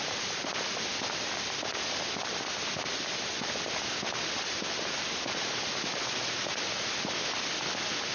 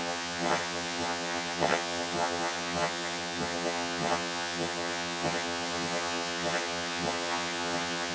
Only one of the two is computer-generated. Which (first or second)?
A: second